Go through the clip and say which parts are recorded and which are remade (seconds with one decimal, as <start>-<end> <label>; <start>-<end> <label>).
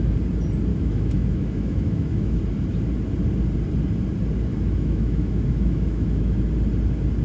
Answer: 0.0-0.7 recorded; 0.7-2.4 remade; 2.4-4.5 recorded; 4.5-6.4 remade; 6.4-7.2 recorded